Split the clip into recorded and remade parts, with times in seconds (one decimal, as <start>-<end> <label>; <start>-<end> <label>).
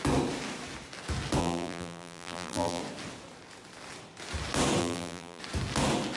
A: 0.0-1.4 recorded; 1.4-2.8 remade; 2.8-4.8 recorded; 4.8-5.4 remade; 5.4-6.2 recorded